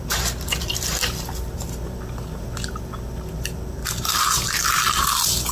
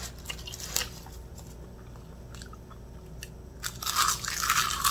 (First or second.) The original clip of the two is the second